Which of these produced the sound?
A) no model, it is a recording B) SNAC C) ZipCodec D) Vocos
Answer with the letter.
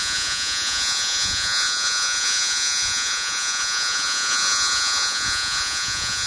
D